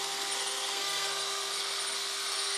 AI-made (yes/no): yes